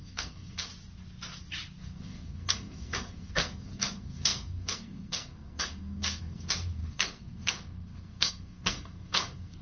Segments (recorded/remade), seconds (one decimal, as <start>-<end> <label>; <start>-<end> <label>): 0.0-0.7 remade; 0.7-1.8 recorded; 1.8-9.6 remade